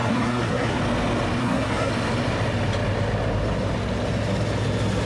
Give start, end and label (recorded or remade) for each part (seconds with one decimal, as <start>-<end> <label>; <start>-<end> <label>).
0.0-0.8 remade; 0.8-1.4 recorded; 1.4-1.9 remade; 1.9-5.1 recorded